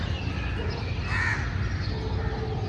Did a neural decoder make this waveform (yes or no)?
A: no